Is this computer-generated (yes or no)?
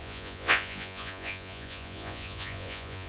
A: yes